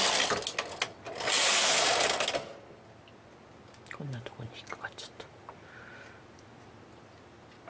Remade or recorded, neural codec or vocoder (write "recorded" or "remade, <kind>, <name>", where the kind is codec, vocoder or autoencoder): recorded